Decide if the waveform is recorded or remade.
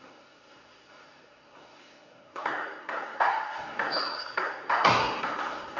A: remade